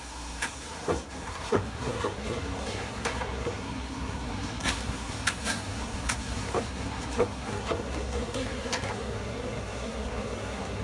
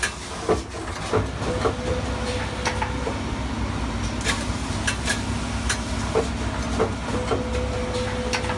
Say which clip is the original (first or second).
second